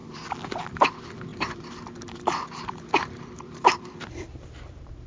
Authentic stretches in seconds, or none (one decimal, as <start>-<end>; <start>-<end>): 0.0-0.6